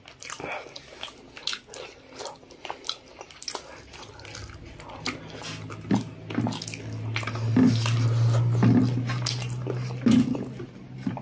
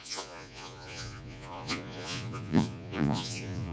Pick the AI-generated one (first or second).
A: second